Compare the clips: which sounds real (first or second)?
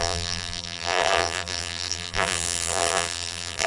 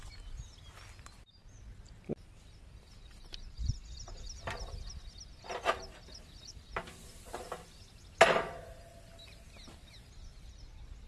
second